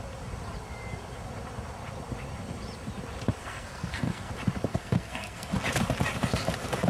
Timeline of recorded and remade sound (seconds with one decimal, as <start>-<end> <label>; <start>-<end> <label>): 0.0-3.4 recorded; 3.4-4.3 remade; 4.3-4.7 recorded; 4.7-5.5 remade; 5.5-6.9 recorded

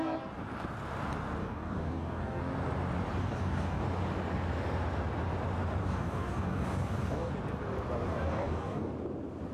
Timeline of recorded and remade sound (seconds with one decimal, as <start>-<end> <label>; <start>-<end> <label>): 0.0-1.4 recorded; 1.4-2.4 remade; 2.4-3.2 recorded; 3.2-3.8 remade; 3.8-5.8 recorded; 5.8-7.3 remade; 7.3-8.1 recorded; 8.1-8.9 remade; 8.9-9.5 recorded

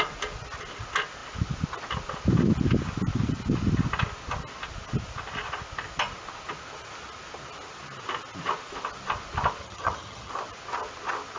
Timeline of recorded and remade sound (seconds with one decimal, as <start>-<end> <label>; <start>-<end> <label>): 0.0-9.6 recorded; 9.6-10.3 remade; 10.3-11.4 recorded

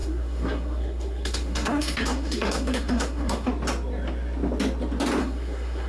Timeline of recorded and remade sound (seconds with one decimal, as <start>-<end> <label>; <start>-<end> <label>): 0.0-3.5 remade; 3.5-5.2 recorded; 5.2-5.9 remade

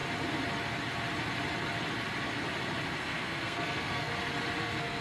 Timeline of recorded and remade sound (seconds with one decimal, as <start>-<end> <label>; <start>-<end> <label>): 0.0-3.0 recorded; 3.0-4.1 remade; 4.1-4.6 recorded; 4.6-5.0 remade

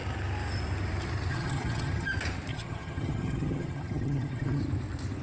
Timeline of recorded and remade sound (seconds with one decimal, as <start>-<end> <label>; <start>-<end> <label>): 0.0-1.3 recorded; 1.3-2.1 remade; 2.1-2.5 recorded; 2.5-4.6 remade; 4.6-5.2 recorded

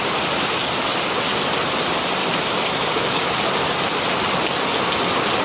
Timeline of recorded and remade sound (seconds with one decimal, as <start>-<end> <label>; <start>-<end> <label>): 0.0-2.2 recorded; 2.2-3.3 remade; 3.3-5.4 recorded